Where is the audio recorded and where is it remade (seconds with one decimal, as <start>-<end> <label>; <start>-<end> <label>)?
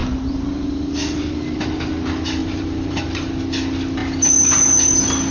0.0-0.9 remade; 0.9-2.4 recorded; 2.4-3.4 remade; 3.4-5.3 recorded